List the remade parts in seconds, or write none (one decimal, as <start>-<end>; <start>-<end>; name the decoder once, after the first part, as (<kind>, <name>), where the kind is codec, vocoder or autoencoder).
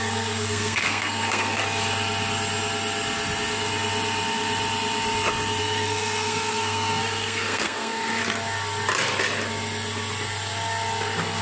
0.0-1.6 (codec, SNAC); 5.6-8.2